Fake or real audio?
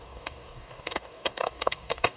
fake